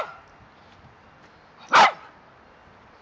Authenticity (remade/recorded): recorded